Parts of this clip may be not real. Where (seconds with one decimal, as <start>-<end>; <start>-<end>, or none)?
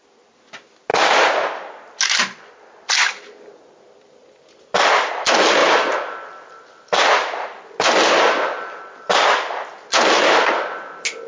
none